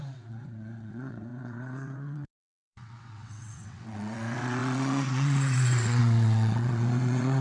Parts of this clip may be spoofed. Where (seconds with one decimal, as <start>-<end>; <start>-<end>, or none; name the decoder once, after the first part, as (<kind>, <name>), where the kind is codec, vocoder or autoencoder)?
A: 0.0-7.4 (vocoder, WaveNeXt)